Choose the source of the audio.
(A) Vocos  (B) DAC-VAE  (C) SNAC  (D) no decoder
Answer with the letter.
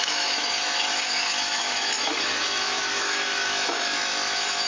B